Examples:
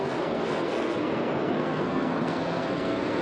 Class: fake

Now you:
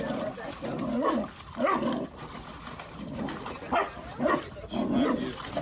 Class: real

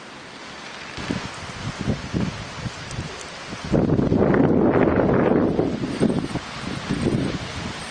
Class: real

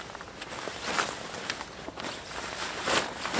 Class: real